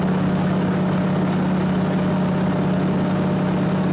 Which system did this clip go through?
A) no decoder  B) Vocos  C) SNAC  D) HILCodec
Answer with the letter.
A